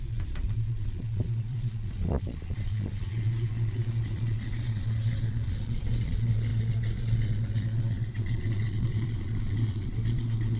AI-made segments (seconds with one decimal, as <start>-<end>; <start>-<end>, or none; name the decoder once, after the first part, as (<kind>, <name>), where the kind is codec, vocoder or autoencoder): 0.0-10.6 (vocoder, Vocos)